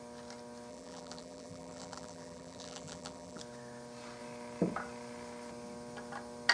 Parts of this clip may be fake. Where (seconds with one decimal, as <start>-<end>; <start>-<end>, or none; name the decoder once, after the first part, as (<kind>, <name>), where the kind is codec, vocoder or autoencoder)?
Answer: 0.7-3.4 (vocoder, BigVGAN v2)